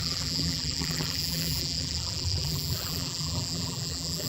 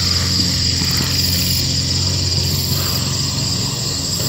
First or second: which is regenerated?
first